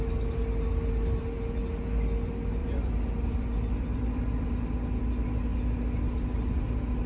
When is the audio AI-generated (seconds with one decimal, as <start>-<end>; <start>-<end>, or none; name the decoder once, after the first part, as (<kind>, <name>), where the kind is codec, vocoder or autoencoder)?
2.6-4.5 (vocoder, BigVGAN v2)